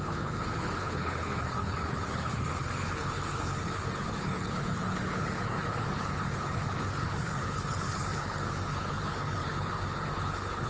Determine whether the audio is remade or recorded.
remade